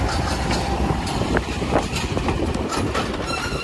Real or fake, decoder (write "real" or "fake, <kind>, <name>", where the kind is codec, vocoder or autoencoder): fake, vocoder, BigVGAN v2